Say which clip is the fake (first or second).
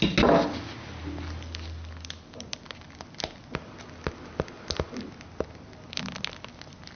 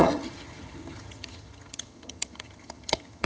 second